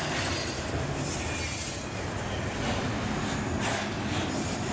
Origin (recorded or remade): recorded